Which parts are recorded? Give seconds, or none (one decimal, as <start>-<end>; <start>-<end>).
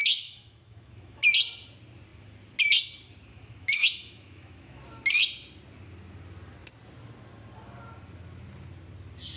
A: 1.3-3.3; 4.8-9.4